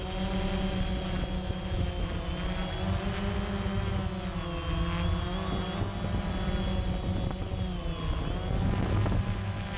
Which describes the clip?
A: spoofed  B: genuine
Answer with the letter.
B